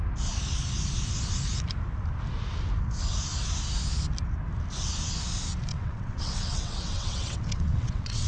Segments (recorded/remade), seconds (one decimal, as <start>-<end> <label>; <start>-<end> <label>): 0.0-5.7 recorded; 5.7-8.3 remade